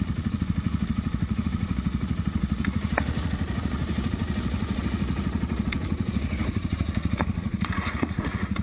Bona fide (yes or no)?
no